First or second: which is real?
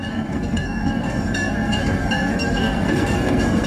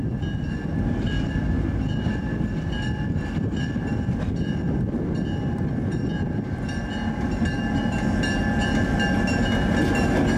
second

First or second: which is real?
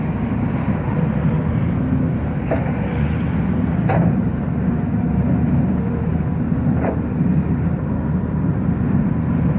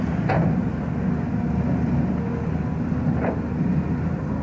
second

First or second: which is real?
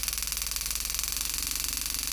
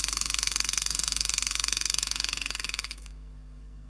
first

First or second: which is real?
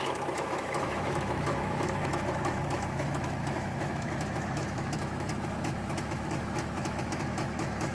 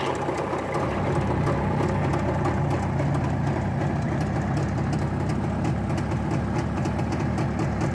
second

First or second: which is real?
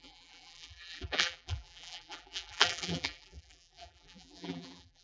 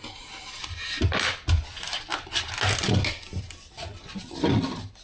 second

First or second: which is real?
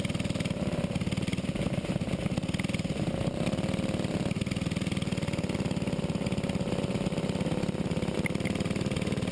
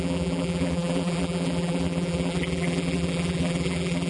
first